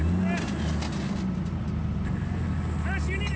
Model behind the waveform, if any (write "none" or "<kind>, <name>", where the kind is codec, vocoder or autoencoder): none